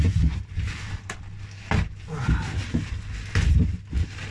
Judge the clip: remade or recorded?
recorded